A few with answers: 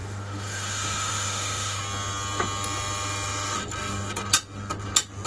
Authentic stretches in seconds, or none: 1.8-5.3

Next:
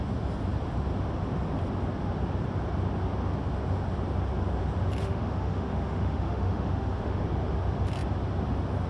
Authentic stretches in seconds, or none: 0.0-5.0; 7.2-8.9

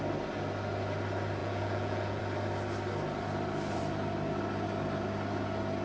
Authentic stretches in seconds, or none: 0.0-1.4; 2.2-5.8

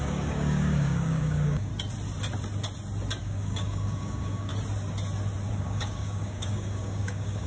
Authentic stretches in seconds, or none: 1.7-3.2; 4.5-5.5

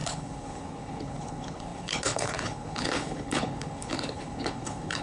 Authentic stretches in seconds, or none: none